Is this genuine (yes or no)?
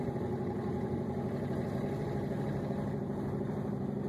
no